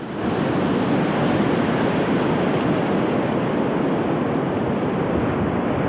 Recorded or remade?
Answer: recorded